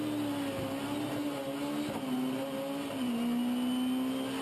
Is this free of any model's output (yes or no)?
yes